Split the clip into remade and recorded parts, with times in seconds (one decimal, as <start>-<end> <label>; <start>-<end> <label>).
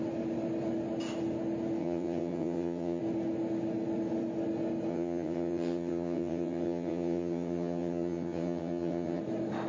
0.0-1.8 recorded; 1.8-3.0 remade; 3.0-4.9 recorded; 4.9-9.2 remade; 9.2-9.7 recorded